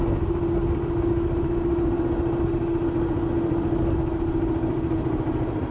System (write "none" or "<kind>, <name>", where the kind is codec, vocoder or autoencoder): none